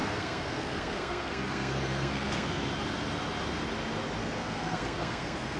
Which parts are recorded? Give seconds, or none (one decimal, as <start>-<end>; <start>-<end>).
2.6-4.2